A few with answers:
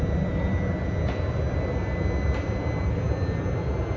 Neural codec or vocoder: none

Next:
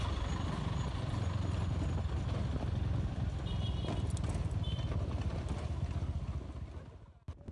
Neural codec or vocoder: none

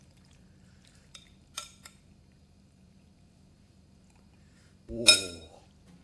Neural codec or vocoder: vocoder, BigVGAN v2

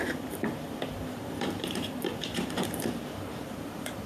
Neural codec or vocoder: vocoder, BigVGAN v2